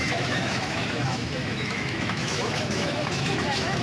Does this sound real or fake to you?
fake